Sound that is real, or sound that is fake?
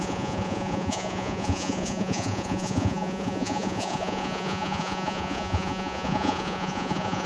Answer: fake